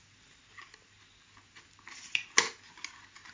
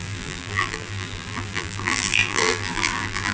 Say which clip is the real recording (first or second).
first